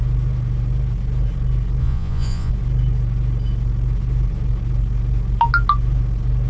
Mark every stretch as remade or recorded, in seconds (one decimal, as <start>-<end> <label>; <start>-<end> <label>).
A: 0.0-1.8 recorded; 1.8-2.5 remade; 2.5-6.5 recorded